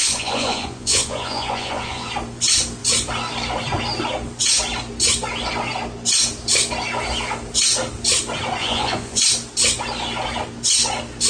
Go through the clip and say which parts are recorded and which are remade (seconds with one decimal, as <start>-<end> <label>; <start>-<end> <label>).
0.0-2.1 remade; 2.1-8.6 recorded; 8.6-9.2 remade; 9.2-11.3 recorded